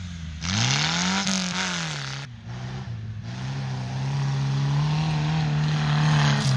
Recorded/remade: recorded